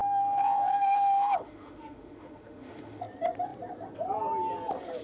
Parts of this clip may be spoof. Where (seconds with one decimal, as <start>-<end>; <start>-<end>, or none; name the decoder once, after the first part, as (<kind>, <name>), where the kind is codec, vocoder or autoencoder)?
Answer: 0.0-3.0 (autoencoder, DAC-VAE)